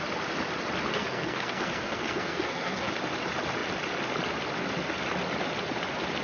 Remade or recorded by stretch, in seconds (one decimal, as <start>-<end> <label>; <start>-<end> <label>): 0.0-0.9 recorded; 0.9-2.9 remade; 2.9-6.2 recorded